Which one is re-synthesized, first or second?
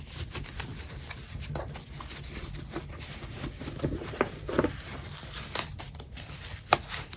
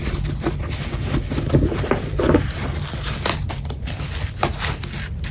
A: first